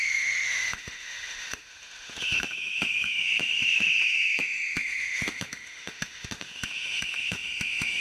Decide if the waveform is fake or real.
fake